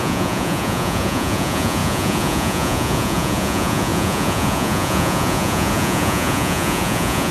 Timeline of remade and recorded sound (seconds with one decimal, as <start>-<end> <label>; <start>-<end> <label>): 0.0-7.3 remade